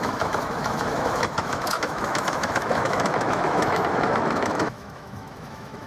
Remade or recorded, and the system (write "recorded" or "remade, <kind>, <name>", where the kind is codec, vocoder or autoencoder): remade, autoencoder, DAC-VAE